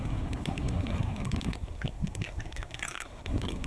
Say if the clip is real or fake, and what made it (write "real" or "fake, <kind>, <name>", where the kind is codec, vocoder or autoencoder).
fake, codec, SNAC